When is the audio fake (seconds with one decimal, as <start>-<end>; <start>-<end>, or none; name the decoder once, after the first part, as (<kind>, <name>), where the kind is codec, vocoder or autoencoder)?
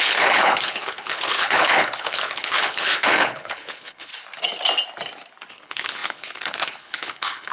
0.0-4.1 (codec, HILCodec); 5.5-7.5